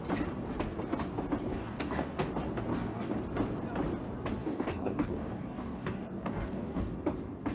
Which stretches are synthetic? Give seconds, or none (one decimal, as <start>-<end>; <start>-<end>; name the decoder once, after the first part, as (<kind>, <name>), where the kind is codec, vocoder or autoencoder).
1.5-2.3 (codec, DAC); 2.7-3.2; 4.4-7.0